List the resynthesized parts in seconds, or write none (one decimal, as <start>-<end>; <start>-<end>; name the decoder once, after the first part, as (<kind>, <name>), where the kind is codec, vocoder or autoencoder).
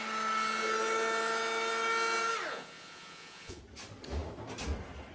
2.5-3.6 (vocoder, Vocos)